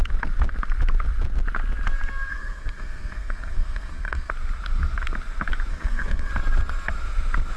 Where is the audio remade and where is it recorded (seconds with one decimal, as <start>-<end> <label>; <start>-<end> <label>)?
0.0-2.3 recorded; 2.3-4.3 remade; 4.3-5.7 recorded; 5.7-6.3 remade; 6.3-7.6 recorded